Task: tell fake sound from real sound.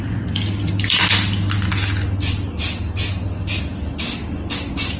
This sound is real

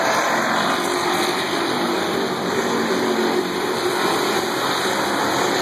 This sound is fake